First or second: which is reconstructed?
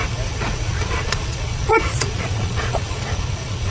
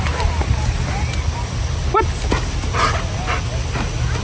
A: first